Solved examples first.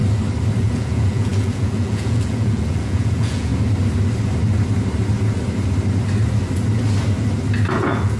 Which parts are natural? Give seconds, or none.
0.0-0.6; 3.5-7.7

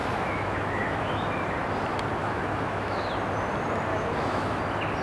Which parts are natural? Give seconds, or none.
1.3-2.2; 3.1-3.9; 4.6-5.0

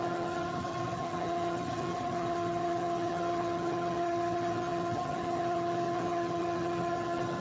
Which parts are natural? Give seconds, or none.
none